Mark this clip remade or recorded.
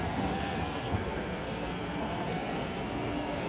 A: remade